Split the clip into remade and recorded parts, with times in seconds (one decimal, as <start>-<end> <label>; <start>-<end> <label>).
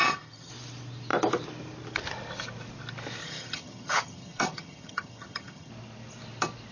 0.0-0.5 remade; 0.5-3.2 recorded; 3.2-5.7 remade; 5.7-6.7 recorded